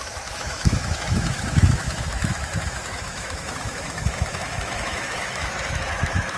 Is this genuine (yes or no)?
no